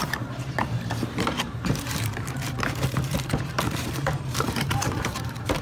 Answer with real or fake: fake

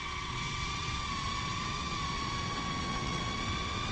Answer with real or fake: fake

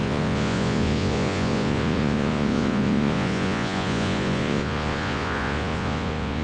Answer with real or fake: fake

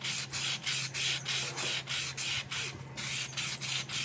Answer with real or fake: real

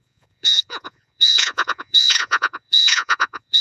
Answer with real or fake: fake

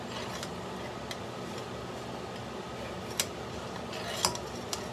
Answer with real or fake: real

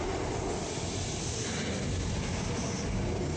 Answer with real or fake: real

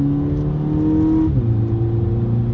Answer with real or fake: real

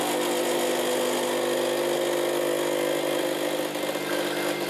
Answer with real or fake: real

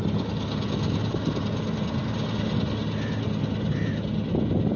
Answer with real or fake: real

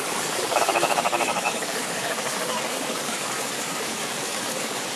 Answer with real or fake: fake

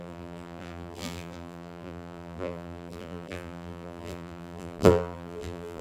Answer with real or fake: fake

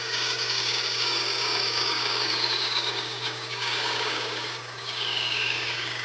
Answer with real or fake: fake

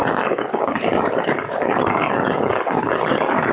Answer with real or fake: fake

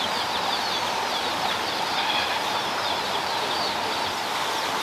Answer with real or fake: fake